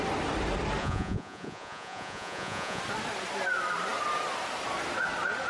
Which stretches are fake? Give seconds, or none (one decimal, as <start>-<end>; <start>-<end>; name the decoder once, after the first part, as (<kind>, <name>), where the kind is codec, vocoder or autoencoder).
0.8-2.8 (vocoder, Vocos)